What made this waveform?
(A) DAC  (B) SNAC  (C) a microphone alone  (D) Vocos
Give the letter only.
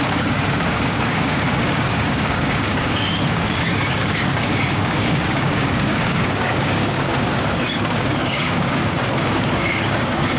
A